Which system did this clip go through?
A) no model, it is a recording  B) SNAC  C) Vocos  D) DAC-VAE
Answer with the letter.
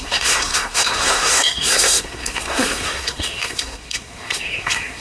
B